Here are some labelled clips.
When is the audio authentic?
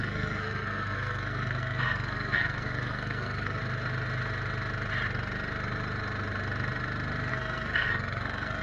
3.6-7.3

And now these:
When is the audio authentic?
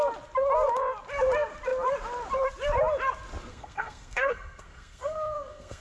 0.0-3.5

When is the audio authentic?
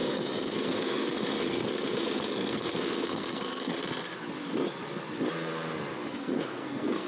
3.8-6.1